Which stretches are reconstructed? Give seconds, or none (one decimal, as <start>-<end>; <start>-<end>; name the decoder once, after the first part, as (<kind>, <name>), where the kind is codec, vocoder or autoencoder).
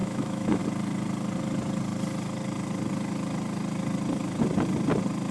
0.0-0.6 (autoencoder, DAC-VAE)